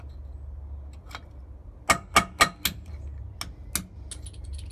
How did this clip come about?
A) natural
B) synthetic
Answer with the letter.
A